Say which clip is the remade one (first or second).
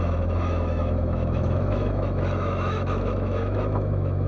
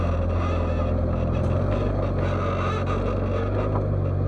first